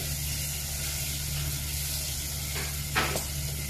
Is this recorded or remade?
recorded